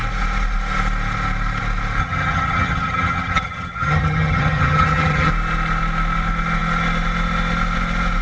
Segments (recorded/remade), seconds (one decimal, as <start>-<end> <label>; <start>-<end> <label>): 0.0-2.0 recorded; 2.0-5.3 remade; 5.3-8.2 recorded